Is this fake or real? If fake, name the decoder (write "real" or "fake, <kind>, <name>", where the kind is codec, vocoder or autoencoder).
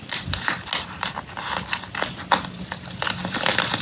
real